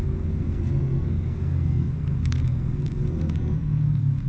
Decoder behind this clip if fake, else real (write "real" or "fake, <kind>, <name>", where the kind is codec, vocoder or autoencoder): fake, codec, SNAC